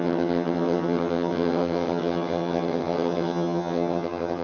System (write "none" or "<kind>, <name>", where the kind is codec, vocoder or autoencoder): vocoder, HiFi-GAN